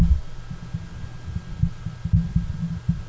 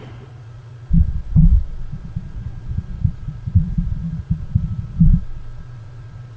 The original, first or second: first